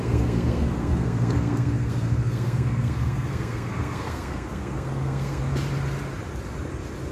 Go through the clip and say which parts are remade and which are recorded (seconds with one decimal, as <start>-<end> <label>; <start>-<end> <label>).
0.0-5.4 remade; 5.4-7.1 recorded